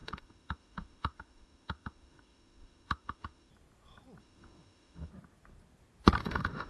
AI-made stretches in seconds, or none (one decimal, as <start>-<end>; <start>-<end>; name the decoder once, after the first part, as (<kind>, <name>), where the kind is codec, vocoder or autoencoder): 0.0-3.5 (autoencoder, DAC-VAE); 4.2-5.1; 6.2-6.7